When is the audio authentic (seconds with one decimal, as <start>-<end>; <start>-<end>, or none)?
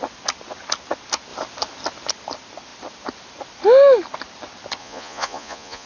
0.0-4.8